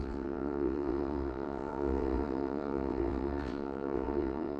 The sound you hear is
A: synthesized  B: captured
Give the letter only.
A